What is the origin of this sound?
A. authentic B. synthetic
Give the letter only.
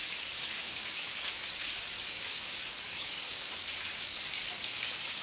B